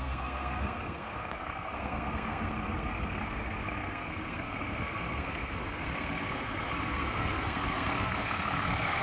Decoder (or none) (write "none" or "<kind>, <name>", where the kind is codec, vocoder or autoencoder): codec, SNAC